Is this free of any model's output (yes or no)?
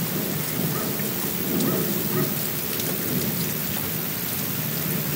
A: yes